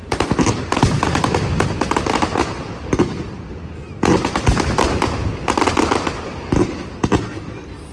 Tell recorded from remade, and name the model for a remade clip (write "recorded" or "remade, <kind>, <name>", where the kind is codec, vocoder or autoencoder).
recorded